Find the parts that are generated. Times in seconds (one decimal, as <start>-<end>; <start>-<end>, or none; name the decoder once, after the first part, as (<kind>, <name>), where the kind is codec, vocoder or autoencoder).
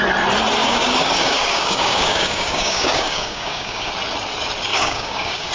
0.6-3.9 (codec, DAC); 4.7-5.5